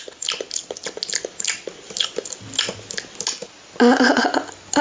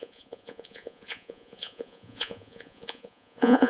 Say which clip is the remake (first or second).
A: second